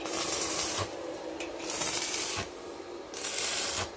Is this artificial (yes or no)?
yes